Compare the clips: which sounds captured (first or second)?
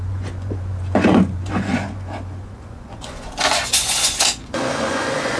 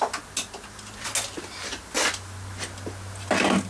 second